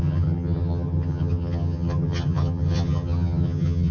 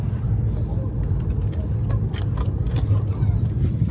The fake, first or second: first